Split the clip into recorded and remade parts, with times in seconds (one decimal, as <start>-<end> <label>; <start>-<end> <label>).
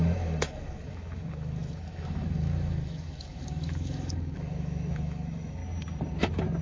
0.0-5.6 remade; 5.6-6.6 recorded